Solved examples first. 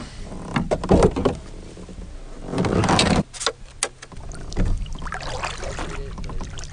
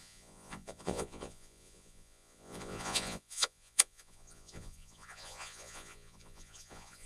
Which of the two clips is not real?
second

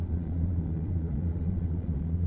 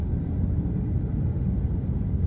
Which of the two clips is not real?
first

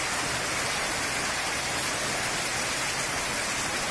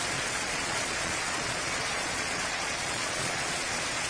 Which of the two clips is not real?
second